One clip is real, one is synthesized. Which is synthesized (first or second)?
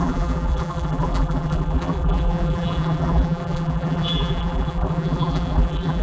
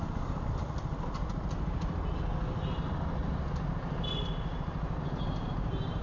first